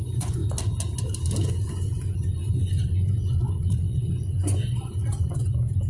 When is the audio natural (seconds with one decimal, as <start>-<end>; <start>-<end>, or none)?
0.4-1.7